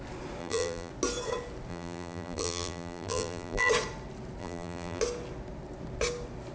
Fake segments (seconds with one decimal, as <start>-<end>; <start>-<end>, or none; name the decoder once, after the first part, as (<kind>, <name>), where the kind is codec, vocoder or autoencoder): 0.4-0.9 (vocoder, BigVGAN v2); 1.7-3.7; 4.4-5.0